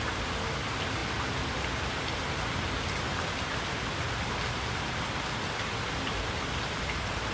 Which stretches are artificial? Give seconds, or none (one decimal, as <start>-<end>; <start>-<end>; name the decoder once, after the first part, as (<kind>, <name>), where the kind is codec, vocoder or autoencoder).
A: none